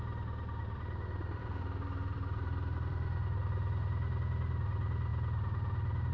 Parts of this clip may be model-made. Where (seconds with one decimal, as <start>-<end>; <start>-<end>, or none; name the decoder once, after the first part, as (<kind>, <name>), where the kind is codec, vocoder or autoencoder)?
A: 0.6-3.4 (vocoder, BigVGAN v2)